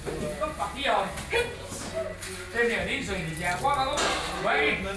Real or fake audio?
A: real